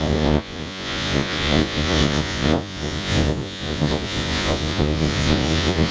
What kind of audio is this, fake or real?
fake